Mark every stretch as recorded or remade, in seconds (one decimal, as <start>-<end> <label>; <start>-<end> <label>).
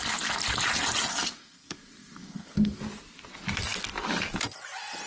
0.0-1.1 recorded; 1.1-2.8 remade; 2.8-5.1 recorded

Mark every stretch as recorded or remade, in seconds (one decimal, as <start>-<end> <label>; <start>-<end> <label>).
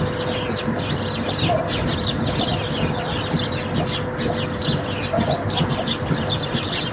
0.0-6.9 recorded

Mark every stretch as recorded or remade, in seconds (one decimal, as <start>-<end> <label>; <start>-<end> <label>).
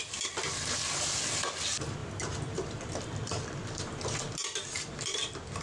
0.0-2.0 recorded; 2.0-5.6 remade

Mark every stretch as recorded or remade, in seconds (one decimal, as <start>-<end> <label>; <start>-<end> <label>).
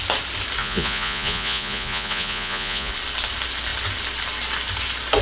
0.0-0.6 recorded; 0.6-2.9 remade; 2.9-5.2 recorded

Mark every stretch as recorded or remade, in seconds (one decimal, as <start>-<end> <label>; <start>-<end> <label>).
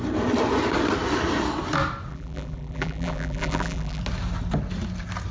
0.0-2.1 recorded; 2.1-4.0 remade; 4.0-5.3 recorded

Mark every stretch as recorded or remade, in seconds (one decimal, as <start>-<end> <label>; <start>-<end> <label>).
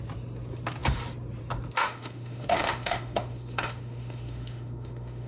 0.0-1.8 recorded; 1.8-5.3 remade